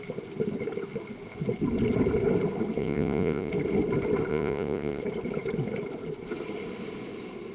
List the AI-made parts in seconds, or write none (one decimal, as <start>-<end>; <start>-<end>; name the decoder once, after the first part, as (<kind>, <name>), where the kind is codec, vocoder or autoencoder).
2.8-3.5 (vocoder, Vocos); 4.3-5.0